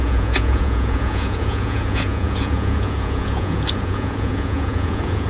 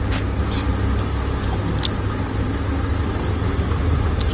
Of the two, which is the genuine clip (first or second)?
second